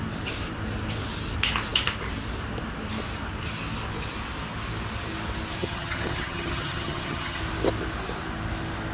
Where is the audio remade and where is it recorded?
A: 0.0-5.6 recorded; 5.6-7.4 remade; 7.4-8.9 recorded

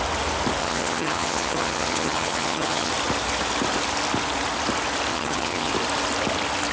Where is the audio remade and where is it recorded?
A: 0.0-0.6 recorded; 0.6-2.9 remade; 2.9-5.1 recorded; 5.1-5.7 remade; 5.7-6.7 recorded

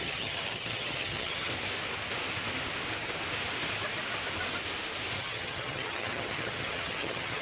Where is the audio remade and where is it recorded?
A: 0.0-1.5 remade; 1.5-5.2 recorded; 5.2-7.4 remade

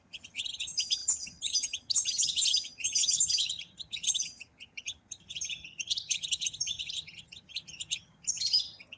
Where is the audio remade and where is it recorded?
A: 0.0-9.0 remade

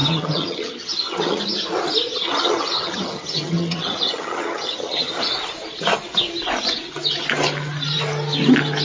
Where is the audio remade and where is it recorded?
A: 0.0-1.4 remade; 1.4-2.1 recorded; 2.1-5.2 remade; 5.2-8.8 recorded

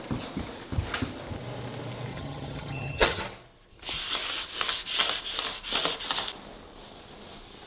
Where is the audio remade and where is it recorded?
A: 0.0-2.1 recorded; 2.1-3.2 remade; 3.2-7.7 recorded

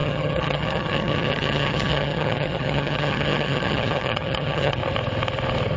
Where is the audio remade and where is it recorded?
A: 0.0-4.8 remade; 4.8-5.8 recorded